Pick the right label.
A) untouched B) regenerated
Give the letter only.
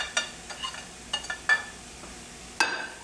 A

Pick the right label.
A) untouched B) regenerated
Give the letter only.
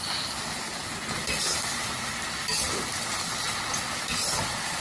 A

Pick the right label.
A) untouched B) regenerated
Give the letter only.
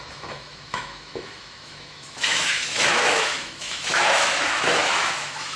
B